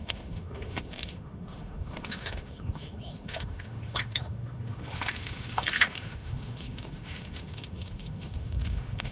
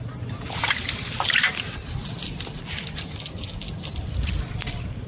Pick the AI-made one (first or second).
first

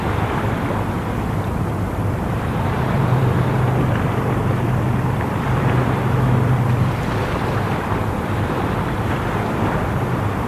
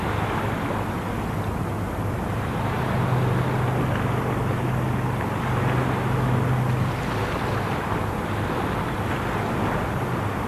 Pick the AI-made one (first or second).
first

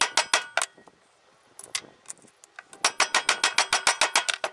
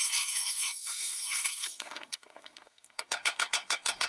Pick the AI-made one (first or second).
second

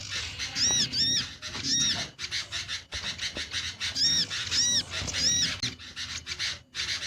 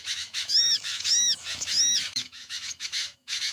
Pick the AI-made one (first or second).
second